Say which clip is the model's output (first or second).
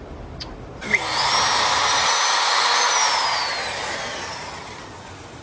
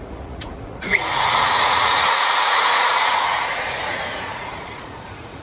second